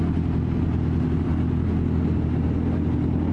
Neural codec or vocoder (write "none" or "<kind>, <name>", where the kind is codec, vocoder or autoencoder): none